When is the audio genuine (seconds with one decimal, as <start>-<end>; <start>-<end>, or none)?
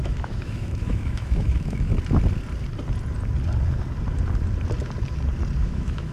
1.9-5.6